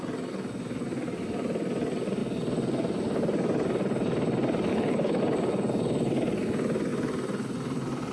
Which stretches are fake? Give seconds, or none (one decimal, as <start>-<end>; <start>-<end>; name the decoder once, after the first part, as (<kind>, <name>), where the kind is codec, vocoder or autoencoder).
4.7-5.2 (codec, HILCodec)